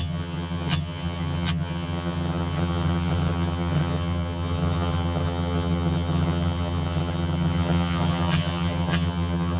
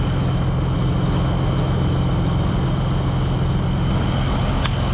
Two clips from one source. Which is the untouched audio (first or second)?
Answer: second